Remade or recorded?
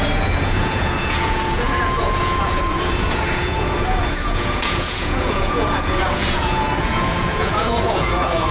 remade